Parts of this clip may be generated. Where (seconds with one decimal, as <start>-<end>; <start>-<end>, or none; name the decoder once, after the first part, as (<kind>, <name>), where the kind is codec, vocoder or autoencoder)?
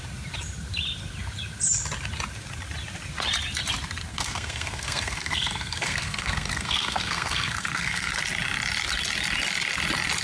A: 4.1-8.1 (codec, SNAC)